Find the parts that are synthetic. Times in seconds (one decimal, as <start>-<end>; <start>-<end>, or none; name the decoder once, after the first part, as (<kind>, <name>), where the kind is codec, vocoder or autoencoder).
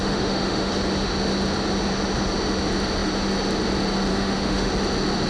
0.0-0.7 (autoencoder, DAC-VAE); 4.1-4.7